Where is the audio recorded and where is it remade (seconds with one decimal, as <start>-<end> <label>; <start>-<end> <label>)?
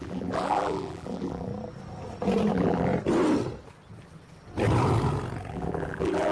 0.0-1.5 remade; 1.5-2.5 recorded; 2.5-2.9 remade; 2.9-5.5 recorded; 5.5-6.3 remade